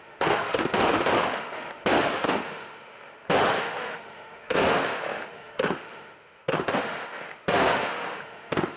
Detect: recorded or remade remade